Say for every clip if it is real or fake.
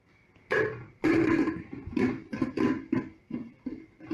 fake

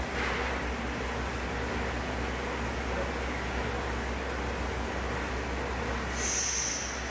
real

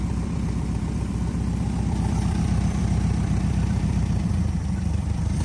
fake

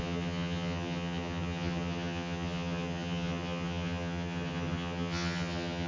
fake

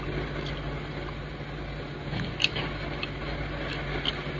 real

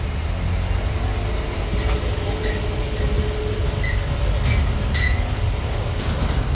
real